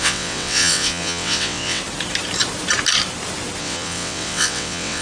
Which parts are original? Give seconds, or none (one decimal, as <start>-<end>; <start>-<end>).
1.8-3.6